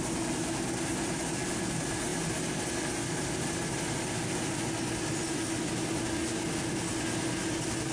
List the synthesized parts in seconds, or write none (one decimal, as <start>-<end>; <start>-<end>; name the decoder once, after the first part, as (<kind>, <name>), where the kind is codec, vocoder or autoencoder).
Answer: none

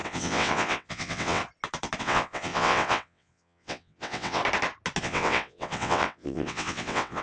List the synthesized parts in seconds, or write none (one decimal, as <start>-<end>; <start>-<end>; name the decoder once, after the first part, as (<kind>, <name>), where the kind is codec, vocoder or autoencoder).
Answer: 0.0-1.4 (vocoder, WaveNeXt); 2.0-4.4; 5.0-7.2

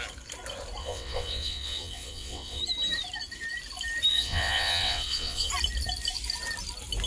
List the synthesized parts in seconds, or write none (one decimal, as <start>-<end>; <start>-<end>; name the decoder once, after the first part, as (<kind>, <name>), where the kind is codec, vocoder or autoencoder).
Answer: 0.8-2.6 (vocoder, WaveNeXt); 4.1-5.5

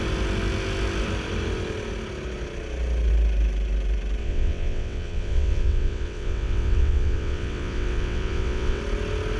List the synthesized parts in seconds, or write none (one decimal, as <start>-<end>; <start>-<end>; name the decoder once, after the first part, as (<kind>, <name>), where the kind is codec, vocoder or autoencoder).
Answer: 4.2-8.8 (vocoder, WaveNeXt)

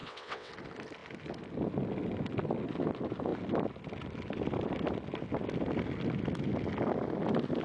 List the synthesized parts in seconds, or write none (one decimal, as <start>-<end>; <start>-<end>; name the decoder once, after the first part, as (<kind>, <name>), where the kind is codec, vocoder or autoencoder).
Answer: 0.0-0.5 (vocoder, WaveNeXt)

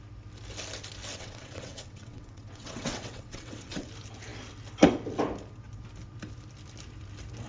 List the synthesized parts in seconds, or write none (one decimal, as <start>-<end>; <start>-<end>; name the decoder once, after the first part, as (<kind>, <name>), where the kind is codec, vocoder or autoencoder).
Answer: 1.1-3.9 (vocoder, WaveNeXt)

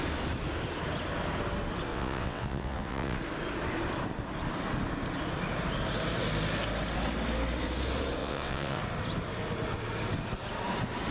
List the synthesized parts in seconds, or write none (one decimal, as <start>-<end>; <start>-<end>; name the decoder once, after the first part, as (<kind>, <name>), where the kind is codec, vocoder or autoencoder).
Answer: 1.9-3.2 (vocoder, WaveNeXt); 8.2-8.8